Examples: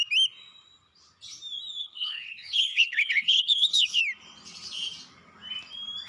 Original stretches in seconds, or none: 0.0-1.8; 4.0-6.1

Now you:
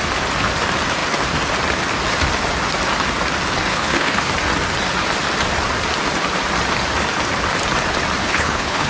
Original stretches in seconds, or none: 0.0-3.7; 4.3-8.2

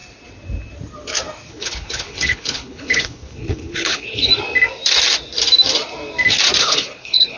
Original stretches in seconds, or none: 0.0-1.5; 4.3-6.6